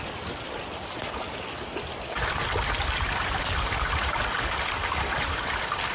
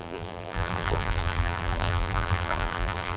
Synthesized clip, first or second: second